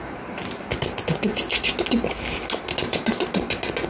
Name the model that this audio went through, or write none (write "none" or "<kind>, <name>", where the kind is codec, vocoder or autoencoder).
none